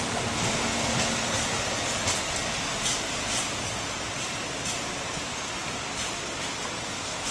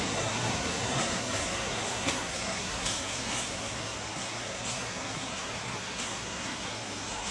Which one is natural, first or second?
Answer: first